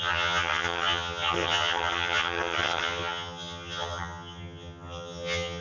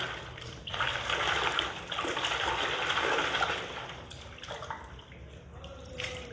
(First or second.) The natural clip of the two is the second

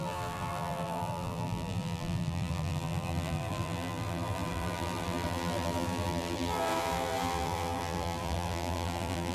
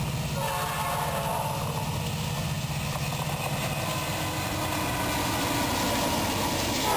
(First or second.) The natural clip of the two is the second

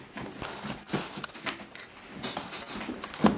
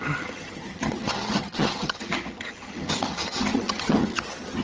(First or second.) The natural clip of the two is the first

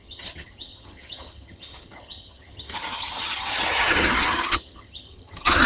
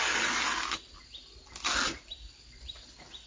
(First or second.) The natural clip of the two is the second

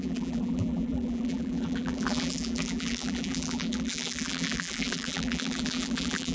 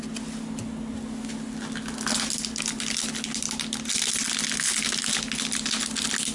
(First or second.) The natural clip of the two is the second